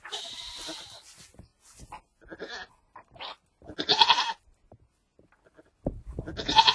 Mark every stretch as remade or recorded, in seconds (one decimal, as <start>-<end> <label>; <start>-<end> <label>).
0.0-6.7 recorded